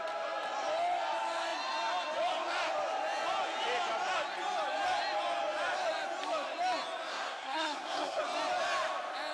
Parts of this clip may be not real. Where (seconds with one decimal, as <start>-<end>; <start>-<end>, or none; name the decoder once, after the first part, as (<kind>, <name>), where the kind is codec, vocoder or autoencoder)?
7.1-8.2 (codec, SNAC)